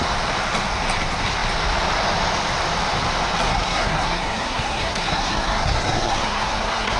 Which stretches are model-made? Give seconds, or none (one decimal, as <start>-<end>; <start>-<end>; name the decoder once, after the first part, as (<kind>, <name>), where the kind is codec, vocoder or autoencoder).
3.5-7.0 (codec, SNAC)